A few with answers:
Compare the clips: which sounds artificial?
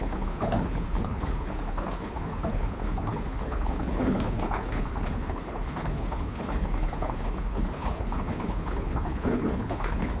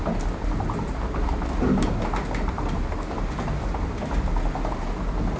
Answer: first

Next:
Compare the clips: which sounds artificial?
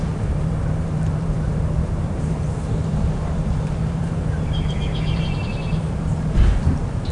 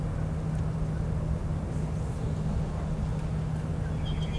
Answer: first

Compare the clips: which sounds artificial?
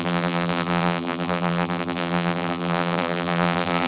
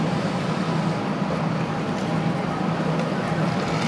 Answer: first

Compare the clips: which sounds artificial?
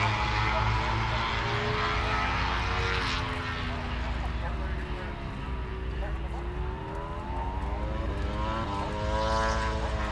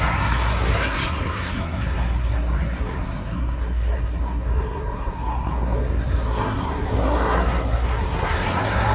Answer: second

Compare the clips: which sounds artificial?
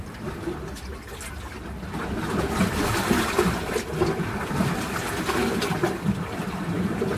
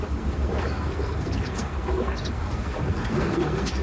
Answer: second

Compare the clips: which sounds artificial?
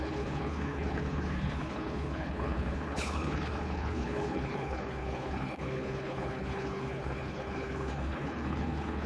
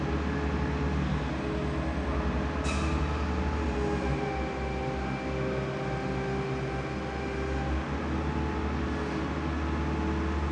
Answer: first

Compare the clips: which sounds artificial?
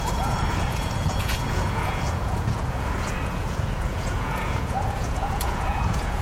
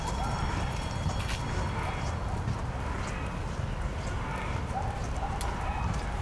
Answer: first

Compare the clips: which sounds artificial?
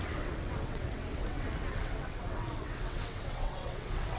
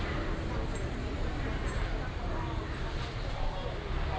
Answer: first